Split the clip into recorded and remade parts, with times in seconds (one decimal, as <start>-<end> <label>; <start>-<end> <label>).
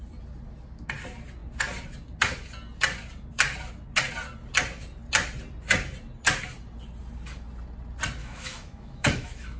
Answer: 0.0-8.2 recorded; 8.2-9.6 remade